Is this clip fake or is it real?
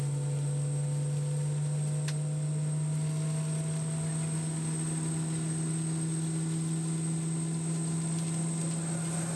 real